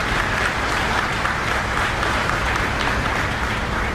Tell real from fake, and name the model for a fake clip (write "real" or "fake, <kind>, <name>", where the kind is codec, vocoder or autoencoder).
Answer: fake, vocoder, BigVGAN v2